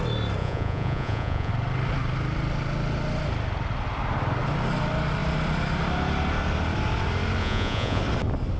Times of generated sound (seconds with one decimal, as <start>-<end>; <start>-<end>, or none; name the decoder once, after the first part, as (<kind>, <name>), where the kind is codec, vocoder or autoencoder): 0.4-1.5 (vocoder, Vocos); 7.4-8.0